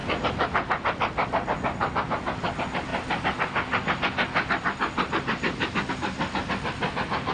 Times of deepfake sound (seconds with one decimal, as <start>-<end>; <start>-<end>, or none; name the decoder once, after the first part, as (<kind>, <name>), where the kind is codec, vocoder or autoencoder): none

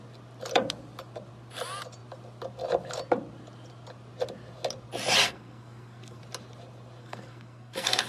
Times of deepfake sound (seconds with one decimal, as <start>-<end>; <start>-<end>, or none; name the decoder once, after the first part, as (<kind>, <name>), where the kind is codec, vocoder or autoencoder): 5.2-6.2 (codec, SNAC); 7.0-8.1

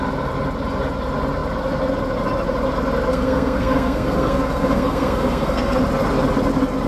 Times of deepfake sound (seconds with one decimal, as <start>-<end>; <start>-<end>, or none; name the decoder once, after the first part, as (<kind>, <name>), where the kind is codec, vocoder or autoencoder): 3.1-5.8 (codec, SNAC)

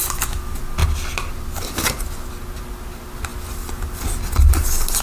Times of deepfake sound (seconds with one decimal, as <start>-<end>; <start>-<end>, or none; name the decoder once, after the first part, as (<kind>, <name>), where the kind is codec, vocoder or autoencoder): none